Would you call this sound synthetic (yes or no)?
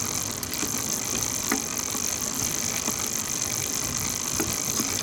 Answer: no